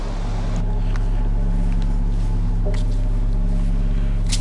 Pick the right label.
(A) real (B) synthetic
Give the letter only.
A